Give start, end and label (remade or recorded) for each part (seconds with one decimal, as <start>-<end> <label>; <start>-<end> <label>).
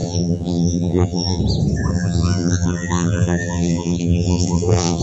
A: 0.0-1.4 remade; 1.4-1.9 recorded; 1.9-5.0 remade